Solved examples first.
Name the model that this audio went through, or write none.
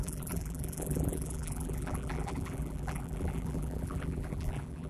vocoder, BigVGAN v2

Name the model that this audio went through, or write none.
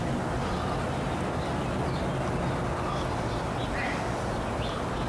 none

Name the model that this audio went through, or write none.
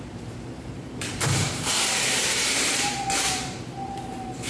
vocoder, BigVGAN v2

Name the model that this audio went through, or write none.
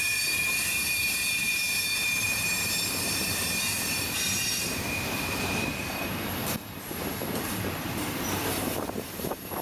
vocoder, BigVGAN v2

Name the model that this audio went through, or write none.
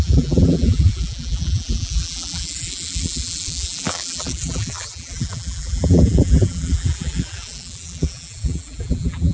vocoder, BigVGAN v2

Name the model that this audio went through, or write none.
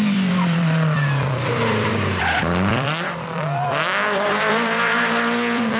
vocoder, BigVGAN v2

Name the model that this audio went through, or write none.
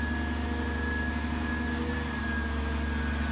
none